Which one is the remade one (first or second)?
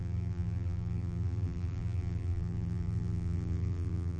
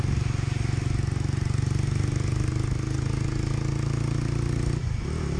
first